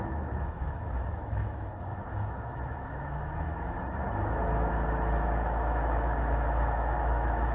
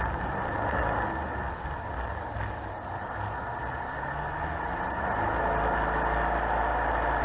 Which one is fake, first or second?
first